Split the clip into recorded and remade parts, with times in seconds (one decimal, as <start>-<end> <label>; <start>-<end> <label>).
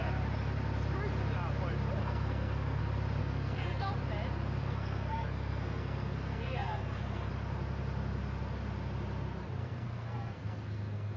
0.0-2.0 recorded; 2.0-2.8 remade; 2.8-3.2 recorded; 3.2-3.9 remade; 3.9-4.6 recorded; 4.6-7.3 remade; 7.3-9.6 recorded; 9.6-11.2 remade